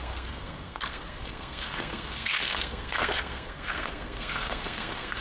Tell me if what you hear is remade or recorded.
remade